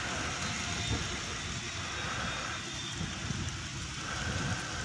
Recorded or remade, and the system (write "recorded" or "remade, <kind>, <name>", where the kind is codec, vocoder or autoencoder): recorded